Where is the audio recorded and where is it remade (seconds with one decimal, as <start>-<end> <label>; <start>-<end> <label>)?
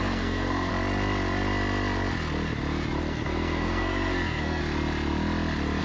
0.0-0.7 remade; 0.7-3.0 recorded; 3.0-4.6 remade; 4.6-5.8 recorded